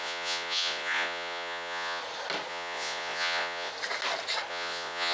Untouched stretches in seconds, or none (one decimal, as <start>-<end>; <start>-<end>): 2.0-2.5; 3.7-4.5